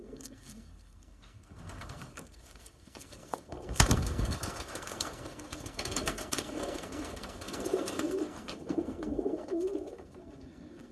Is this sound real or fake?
fake